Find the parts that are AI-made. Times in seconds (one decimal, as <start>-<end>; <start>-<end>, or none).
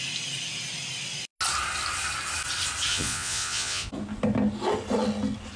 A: 2.9-3.9